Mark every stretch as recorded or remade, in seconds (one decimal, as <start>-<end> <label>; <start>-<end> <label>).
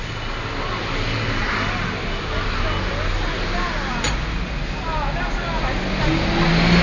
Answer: 0.0-6.8 recorded